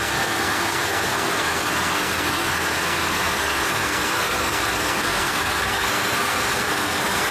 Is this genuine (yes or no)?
no